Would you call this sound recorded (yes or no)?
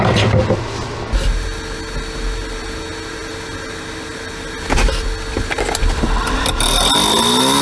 yes